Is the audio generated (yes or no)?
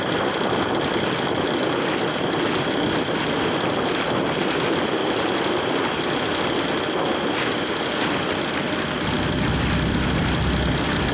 no